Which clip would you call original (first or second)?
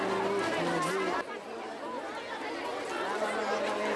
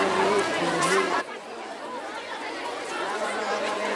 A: first